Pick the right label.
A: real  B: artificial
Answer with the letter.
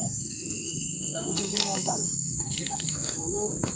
B